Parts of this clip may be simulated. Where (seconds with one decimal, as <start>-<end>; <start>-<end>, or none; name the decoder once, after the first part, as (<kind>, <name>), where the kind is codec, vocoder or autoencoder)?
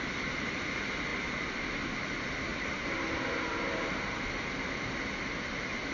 1.1-1.9 (vocoder, BigVGAN v2); 2.5-4.4